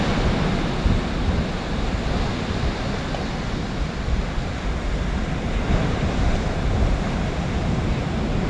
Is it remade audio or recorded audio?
recorded